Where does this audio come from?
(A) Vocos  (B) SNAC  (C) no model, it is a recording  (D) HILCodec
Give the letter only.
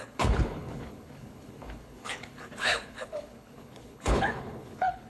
D